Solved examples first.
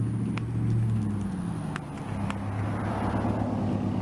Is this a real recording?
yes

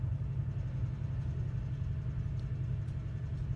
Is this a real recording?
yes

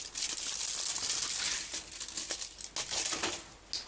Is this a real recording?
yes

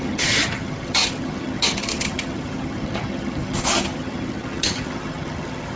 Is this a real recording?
no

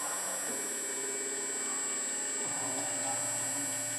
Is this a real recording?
yes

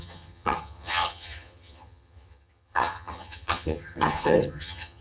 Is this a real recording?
no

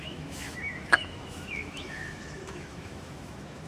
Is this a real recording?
no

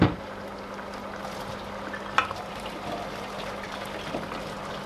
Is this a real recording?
yes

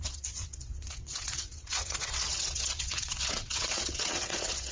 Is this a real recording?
no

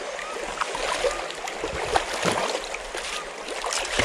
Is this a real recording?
yes